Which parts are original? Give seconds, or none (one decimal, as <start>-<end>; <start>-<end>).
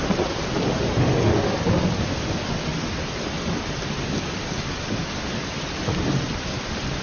0.0-7.0